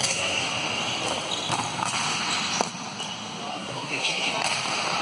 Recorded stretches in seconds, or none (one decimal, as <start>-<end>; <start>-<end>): 0.5-3.5; 4.3-5.0